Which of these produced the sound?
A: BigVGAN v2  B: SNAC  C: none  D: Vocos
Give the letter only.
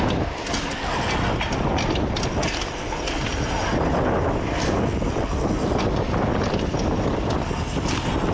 C